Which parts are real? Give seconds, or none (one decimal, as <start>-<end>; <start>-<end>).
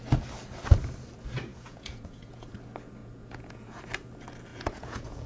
0.0-1.5; 2.5-3.0; 3.8-4.5